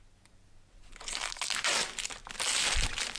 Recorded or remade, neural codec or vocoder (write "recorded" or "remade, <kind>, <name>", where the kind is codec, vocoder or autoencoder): recorded